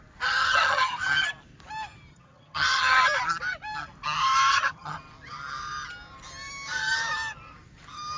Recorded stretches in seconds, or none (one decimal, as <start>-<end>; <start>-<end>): 0.0-0.4; 1.3-2.1; 3.0-4.5; 5.0-8.2